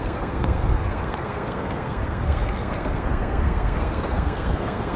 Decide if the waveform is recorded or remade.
remade